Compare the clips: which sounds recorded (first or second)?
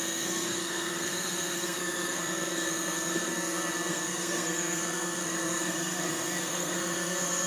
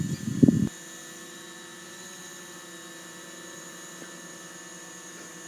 second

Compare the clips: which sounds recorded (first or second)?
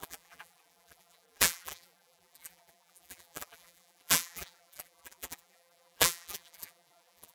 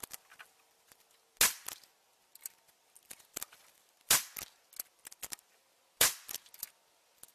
second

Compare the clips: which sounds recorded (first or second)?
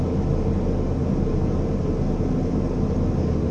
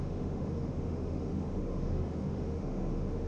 first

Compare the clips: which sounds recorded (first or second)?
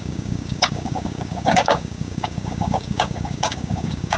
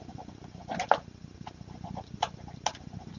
second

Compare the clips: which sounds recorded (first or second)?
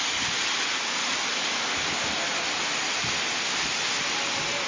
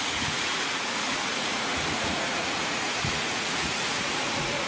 first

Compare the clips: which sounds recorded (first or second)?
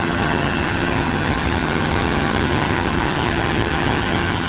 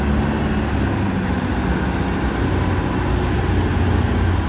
second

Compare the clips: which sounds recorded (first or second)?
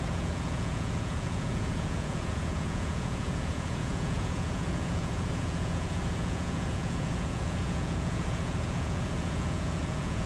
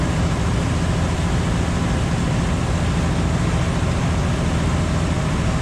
second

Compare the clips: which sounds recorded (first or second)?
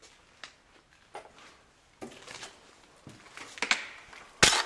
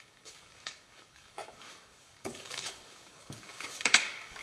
first